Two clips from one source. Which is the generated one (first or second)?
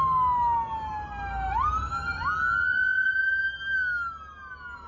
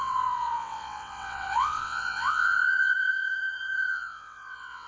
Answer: second